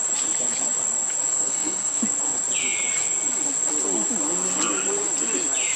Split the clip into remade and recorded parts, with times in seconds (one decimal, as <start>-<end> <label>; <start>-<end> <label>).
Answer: 0.0-1.3 recorded; 1.3-2.0 remade; 2.0-5.8 recorded